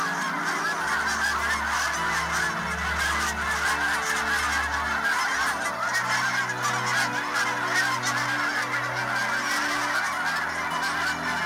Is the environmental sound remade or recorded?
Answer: recorded